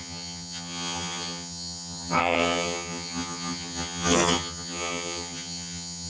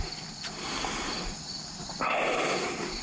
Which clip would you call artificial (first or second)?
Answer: first